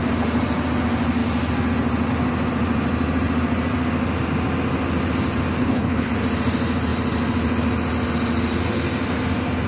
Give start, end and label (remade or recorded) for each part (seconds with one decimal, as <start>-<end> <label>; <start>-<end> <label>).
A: 0.0-5.6 recorded; 5.6-6.1 remade; 6.1-9.7 recorded

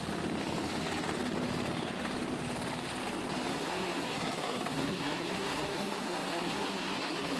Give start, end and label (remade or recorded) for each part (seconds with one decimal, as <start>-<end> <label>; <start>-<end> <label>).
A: 0.0-3.5 recorded; 3.5-7.4 remade